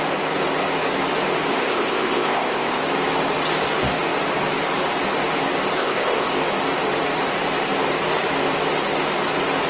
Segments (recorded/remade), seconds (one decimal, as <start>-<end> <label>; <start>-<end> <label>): 0.0-1.5 recorded; 1.5-2.8 remade; 2.8-5.8 recorded; 5.8-6.4 remade; 6.4-9.7 recorded